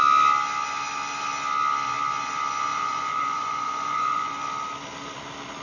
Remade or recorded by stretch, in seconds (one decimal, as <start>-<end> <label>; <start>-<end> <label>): 0.0-2.7 recorded; 2.7-4.3 remade; 4.3-5.6 recorded